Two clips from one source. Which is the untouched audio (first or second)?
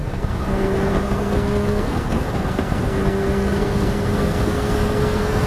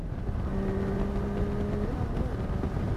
second